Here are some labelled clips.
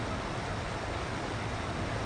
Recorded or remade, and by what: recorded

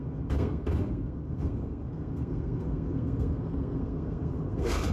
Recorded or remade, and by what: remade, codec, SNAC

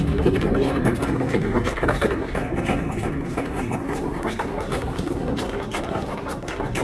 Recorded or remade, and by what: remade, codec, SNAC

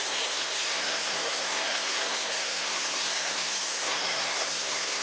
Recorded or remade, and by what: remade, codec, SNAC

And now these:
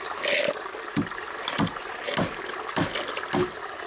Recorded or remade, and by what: recorded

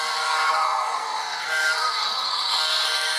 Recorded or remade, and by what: remade, codec, SNAC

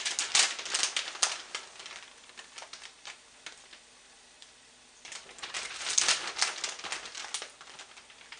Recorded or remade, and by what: recorded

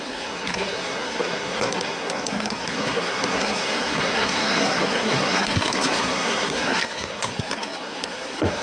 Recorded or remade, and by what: remade, codec, SNAC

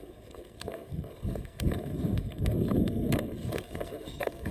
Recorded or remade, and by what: remade, codec, SNAC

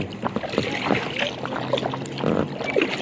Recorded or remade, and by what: recorded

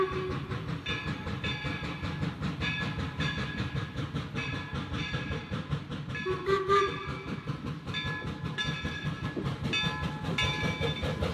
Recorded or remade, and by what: recorded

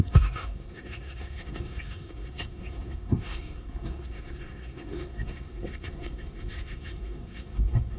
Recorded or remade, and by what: remade, codec, SNAC